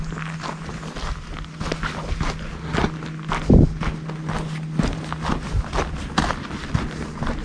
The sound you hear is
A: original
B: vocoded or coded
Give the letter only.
A